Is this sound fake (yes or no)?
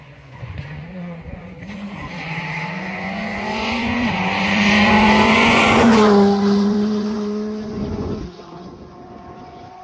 yes